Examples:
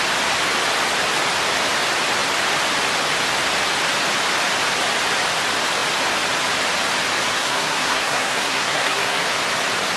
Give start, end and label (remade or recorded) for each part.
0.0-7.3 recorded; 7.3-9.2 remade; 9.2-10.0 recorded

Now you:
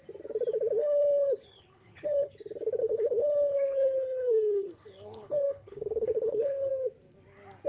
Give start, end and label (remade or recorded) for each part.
0.0-0.8 recorded; 0.8-2.3 remade; 2.3-2.8 recorded; 2.8-6.7 remade; 6.7-7.7 recorded

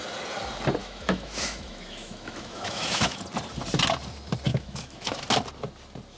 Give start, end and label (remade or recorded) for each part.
0.0-0.8 recorded; 0.8-3.2 remade; 3.2-4.5 recorded; 4.5-5.2 remade; 5.2-6.2 recorded

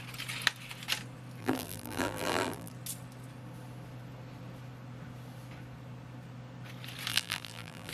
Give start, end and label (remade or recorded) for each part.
0.0-1.4 recorded; 1.4-2.7 remade; 2.7-7.1 recorded; 7.1-7.9 remade